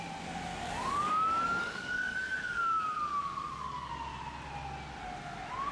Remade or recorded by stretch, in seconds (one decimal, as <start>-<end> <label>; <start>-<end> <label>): 0.0-0.5 recorded; 0.5-3.9 remade; 3.9-5.7 recorded